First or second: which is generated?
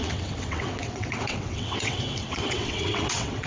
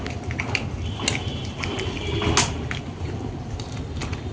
first